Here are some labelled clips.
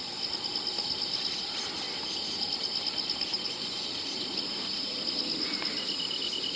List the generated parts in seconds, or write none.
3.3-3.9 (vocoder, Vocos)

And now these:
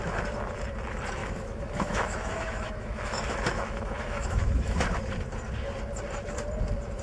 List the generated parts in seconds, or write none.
1.2-4.8 (autoencoder, DAC-VAE)

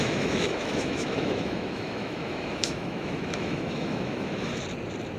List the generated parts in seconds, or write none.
0.0-4.5 (autoencoder, DAC-VAE)

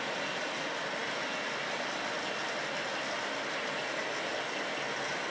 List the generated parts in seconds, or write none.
none